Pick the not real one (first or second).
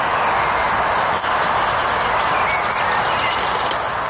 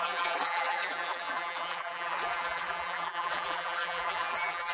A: second